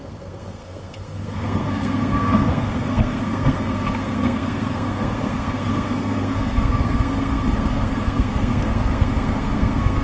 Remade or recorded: remade